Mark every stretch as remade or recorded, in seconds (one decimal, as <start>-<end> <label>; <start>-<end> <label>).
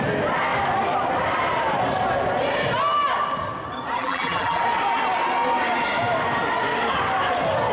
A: 0.0-4.0 recorded; 4.0-4.6 remade; 4.6-7.7 recorded